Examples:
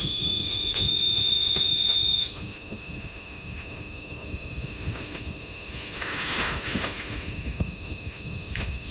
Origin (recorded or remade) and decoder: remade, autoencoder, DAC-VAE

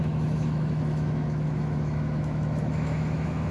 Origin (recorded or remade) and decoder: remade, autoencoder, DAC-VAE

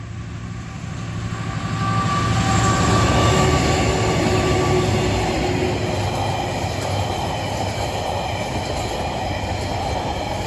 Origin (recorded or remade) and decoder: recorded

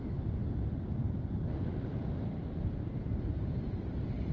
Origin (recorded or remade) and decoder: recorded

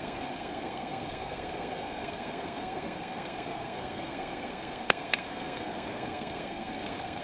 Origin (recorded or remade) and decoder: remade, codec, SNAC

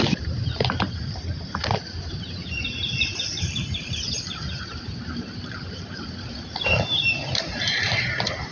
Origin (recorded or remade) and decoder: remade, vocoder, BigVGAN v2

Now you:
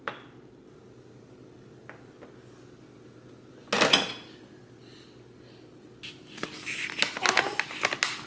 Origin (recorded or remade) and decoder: recorded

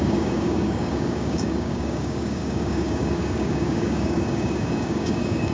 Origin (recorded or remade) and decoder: remade, codec, DAC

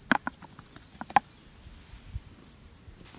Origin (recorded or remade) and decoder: recorded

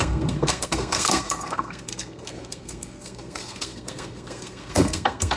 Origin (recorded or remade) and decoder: remade, codec, SNAC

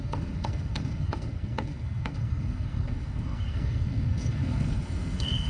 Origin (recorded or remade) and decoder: remade, codec, SNAC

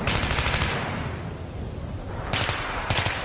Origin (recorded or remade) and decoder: recorded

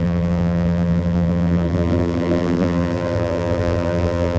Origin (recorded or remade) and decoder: remade, vocoder, BigVGAN v2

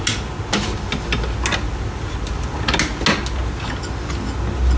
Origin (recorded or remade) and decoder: recorded